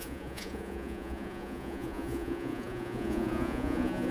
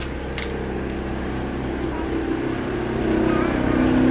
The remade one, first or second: first